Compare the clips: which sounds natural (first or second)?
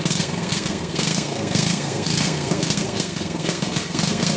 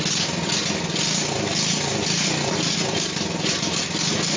second